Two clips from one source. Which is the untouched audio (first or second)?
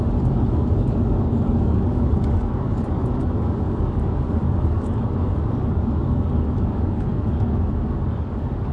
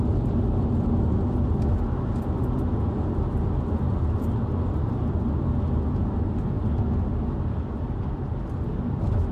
second